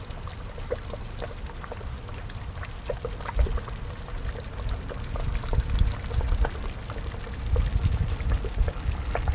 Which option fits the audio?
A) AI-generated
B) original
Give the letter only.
B